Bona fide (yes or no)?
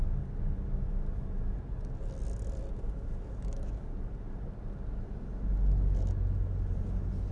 yes